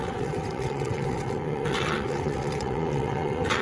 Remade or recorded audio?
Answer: remade